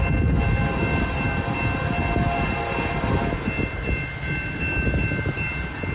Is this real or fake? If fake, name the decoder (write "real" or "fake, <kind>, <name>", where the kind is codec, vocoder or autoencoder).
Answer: real